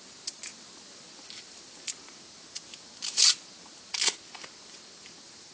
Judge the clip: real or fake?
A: real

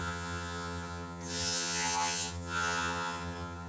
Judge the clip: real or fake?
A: fake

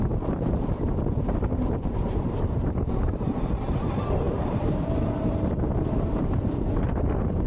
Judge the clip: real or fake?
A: fake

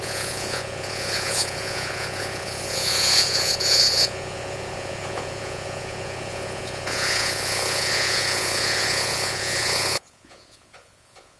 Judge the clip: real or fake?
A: fake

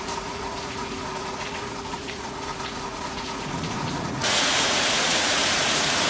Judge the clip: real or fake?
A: fake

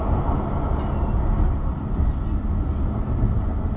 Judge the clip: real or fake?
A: real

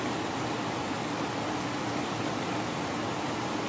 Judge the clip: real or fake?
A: real